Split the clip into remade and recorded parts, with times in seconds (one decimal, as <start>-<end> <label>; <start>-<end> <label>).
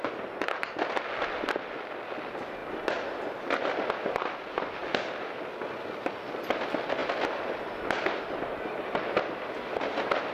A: 0.0-2.6 recorded; 2.6-3.7 remade; 3.7-10.3 recorded